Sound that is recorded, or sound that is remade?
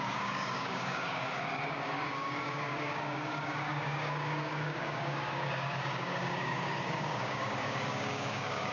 remade